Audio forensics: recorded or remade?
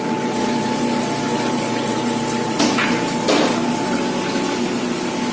recorded